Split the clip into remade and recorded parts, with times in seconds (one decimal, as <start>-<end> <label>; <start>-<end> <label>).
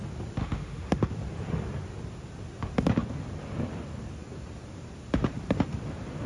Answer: 0.0-0.4 recorded; 0.4-1.1 remade; 1.1-6.3 recorded